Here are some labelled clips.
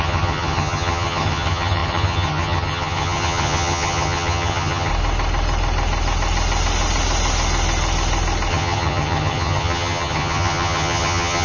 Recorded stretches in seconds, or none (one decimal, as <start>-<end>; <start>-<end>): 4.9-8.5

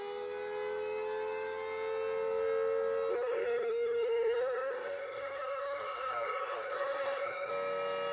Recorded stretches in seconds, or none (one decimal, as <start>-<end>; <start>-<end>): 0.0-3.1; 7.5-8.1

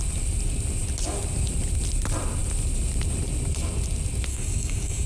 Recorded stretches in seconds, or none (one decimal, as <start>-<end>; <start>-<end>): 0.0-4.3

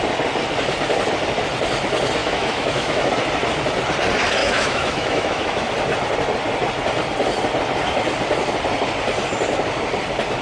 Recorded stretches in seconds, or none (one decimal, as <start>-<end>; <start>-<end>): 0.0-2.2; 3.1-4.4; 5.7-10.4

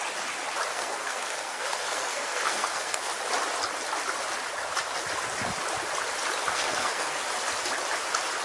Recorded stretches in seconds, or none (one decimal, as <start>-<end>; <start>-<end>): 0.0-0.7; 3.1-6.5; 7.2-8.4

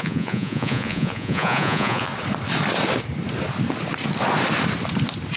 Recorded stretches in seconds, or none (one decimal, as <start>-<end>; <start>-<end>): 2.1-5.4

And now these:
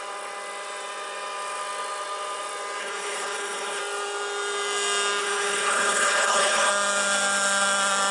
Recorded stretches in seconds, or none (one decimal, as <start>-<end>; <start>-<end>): 0.0-2.8; 3.8-5.2; 6.7-8.1